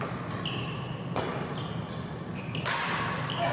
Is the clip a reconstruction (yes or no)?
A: no